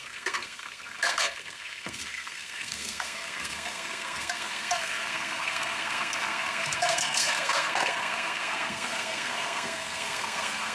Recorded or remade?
remade